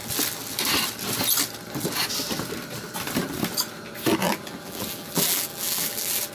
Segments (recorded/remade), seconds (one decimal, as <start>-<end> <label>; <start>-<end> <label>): 0.0-4.2 recorded; 4.2-6.3 remade